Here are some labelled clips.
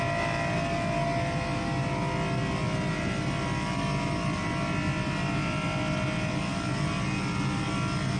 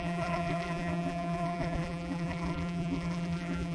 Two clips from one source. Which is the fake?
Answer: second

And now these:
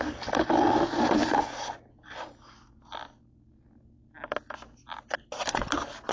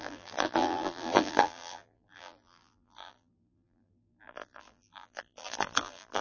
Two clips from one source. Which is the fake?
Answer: second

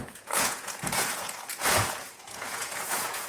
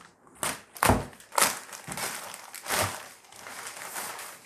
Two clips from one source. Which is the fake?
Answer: first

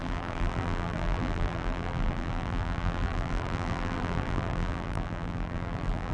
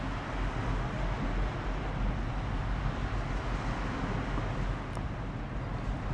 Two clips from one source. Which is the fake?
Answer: first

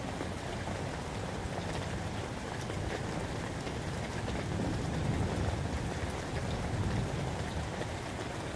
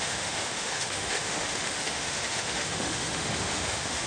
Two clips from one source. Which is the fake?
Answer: second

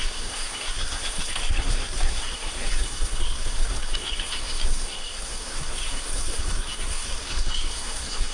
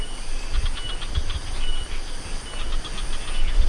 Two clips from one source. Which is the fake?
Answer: first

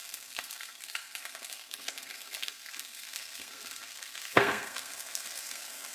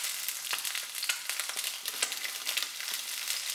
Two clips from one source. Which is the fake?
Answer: first